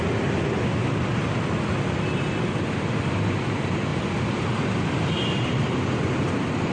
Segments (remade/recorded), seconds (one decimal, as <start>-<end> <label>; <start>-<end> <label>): 0.0-6.7 recorded